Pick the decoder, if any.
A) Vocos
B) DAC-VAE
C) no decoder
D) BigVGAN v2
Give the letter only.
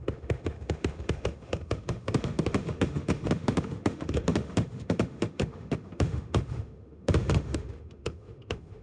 B